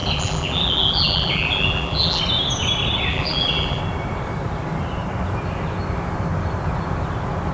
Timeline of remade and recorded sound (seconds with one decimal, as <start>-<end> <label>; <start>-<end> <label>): 0.0-2.2 remade; 2.2-3.1 recorded; 3.1-3.8 remade; 3.8-7.5 recorded